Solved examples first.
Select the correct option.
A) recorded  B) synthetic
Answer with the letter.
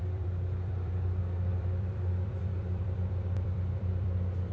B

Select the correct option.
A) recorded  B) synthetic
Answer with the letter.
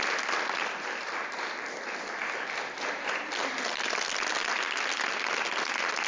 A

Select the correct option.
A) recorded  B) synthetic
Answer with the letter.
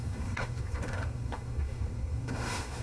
B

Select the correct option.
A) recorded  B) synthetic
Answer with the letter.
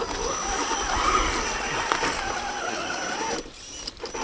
A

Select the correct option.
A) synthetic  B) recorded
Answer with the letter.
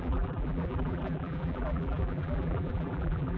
A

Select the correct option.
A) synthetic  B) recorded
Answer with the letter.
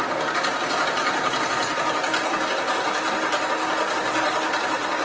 B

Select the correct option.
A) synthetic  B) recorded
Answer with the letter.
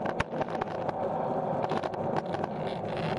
B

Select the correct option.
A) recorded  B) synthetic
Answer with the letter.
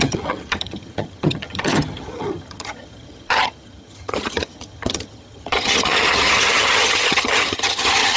B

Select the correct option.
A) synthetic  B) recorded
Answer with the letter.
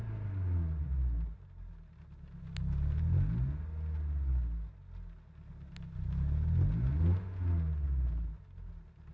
B